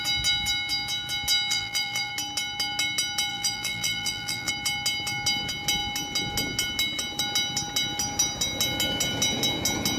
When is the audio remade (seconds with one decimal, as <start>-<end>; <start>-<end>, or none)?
1.5-2.1; 3.3-4.5